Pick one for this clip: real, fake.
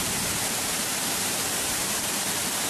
fake